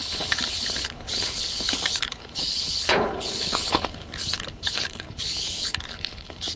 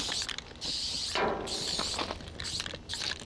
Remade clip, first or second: first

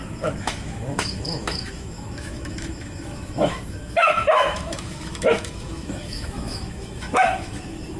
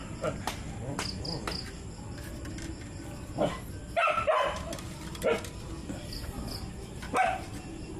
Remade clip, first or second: first